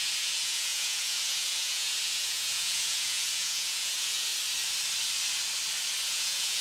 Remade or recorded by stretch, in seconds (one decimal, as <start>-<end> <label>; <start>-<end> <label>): 0.0-4.3 remade; 4.3-6.1 recorded; 6.1-6.6 remade